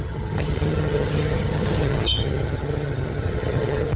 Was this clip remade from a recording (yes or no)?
yes